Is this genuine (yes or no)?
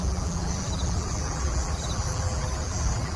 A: no